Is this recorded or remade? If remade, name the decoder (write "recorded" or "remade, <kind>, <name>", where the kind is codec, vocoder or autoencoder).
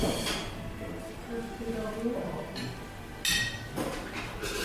recorded